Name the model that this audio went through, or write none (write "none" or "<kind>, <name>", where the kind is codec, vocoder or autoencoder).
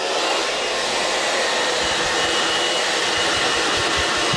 none